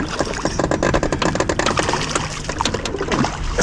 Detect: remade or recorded recorded